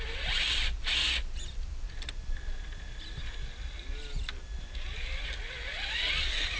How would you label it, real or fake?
real